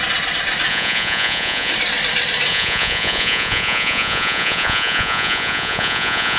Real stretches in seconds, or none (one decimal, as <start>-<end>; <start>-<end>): 0.0-0.7; 1.7-2.5